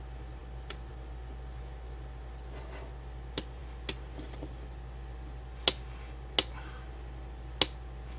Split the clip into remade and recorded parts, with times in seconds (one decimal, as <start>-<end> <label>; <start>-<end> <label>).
0.0-8.2 recorded